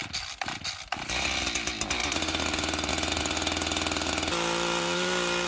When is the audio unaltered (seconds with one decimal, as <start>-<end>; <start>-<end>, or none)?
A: 0.0-5.5